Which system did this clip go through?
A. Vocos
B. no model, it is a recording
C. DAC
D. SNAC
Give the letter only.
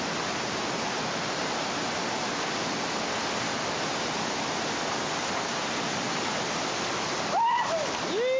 B